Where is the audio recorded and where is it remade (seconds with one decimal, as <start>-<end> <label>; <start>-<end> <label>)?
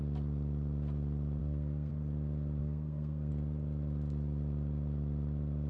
0.0-1.4 recorded; 1.4-1.9 remade; 1.9-2.6 recorded; 2.6-3.3 remade; 3.3-5.7 recorded